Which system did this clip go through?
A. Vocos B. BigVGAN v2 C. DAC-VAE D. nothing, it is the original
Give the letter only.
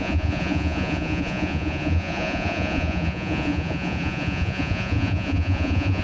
A